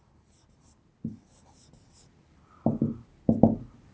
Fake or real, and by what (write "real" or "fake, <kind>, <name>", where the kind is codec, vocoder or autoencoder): real